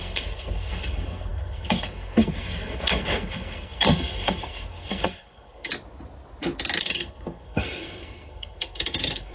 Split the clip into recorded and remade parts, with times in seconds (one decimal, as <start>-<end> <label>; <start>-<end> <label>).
0.0-5.7 remade; 5.7-6.8 recorded; 6.8-9.3 remade